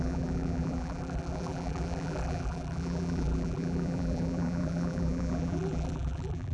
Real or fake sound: fake